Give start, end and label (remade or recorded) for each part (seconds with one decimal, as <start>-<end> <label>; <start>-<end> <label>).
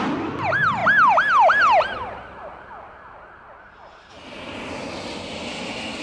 0.0-6.0 recorded